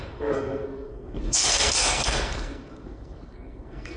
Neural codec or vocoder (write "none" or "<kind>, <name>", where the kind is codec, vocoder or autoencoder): codec, SNAC